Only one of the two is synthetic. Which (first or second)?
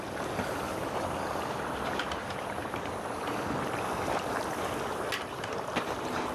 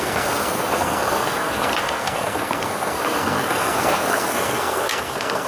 second